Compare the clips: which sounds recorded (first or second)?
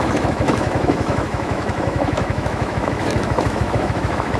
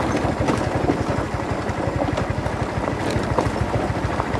second